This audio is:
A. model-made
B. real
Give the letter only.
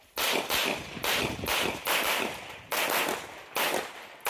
B